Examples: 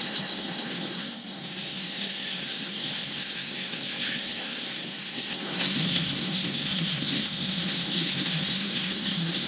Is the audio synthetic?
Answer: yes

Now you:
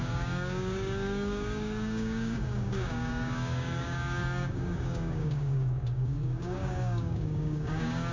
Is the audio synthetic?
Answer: yes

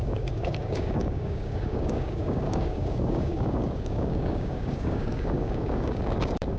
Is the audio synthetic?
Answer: yes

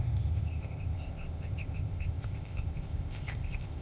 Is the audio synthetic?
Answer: yes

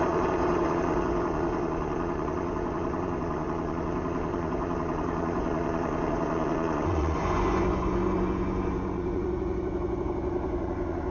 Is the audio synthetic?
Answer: yes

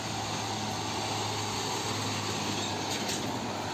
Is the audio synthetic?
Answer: no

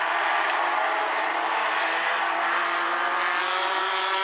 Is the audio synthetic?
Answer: yes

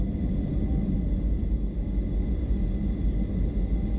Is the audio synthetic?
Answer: no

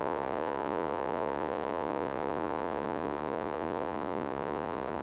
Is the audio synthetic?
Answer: yes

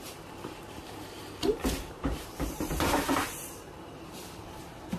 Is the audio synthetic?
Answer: yes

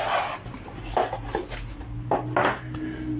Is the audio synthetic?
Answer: no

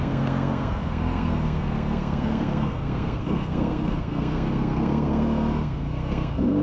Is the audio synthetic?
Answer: yes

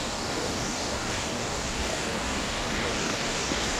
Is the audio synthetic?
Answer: yes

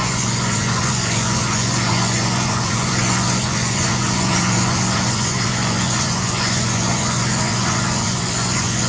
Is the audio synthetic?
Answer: yes